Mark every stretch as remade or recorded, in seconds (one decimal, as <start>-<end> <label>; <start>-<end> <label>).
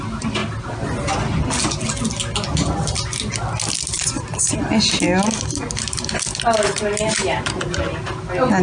0.0-8.6 recorded